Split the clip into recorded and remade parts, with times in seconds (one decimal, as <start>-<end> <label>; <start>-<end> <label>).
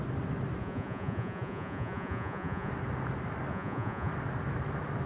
0.0-0.6 recorded; 0.6-2.7 remade; 2.7-3.5 recorded; 3.5-4.1 remade; 4.1-5.1 recorded